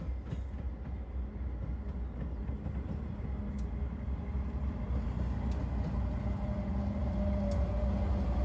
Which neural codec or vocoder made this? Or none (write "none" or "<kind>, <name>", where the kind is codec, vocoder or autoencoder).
none